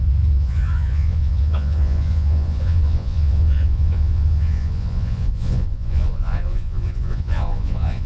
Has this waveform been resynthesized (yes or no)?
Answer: yes